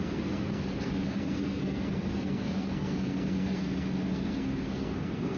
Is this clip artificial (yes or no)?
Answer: yes